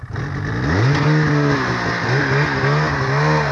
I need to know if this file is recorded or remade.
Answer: recorded